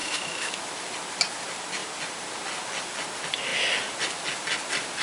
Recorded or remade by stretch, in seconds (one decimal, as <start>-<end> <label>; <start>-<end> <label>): 0.0-0.6 remade; 0.6-5.0 recorded